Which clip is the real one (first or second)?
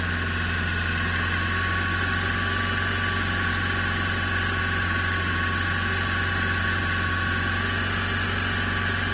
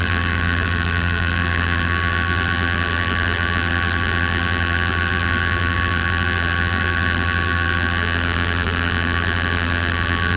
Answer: first